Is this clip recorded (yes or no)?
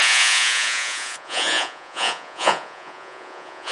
no